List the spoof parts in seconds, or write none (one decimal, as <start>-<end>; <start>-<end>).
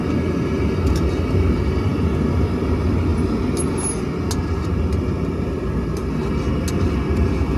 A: none